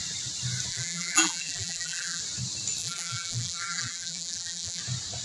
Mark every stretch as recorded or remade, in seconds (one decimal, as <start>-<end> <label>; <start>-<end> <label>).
0.0-0.7 recorded; 0.7-2.2 remade; 2.2-2.8 recorded; 2.8-4.8 remade; 4.8-5.2 recorded